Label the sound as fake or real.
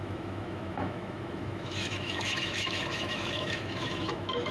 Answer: fake